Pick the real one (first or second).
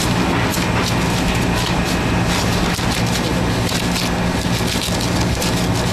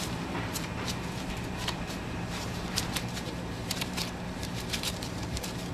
first